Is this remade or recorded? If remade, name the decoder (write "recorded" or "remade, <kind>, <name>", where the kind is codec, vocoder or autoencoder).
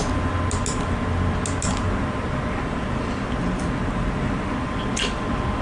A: recorded